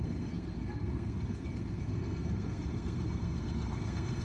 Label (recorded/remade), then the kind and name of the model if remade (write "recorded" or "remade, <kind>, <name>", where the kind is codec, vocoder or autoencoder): remade, codec, SNAC